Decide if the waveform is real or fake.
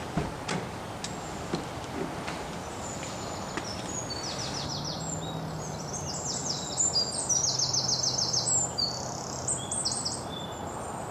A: real